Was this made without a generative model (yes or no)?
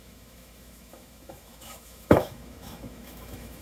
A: no